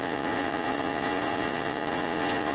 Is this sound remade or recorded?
remade